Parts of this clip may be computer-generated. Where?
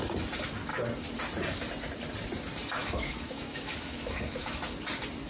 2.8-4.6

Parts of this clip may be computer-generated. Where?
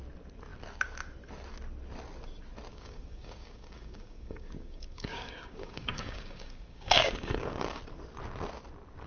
2.7-7.8